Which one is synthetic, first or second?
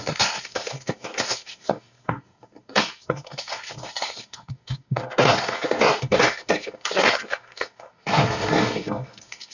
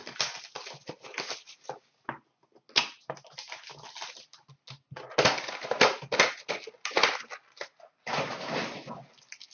first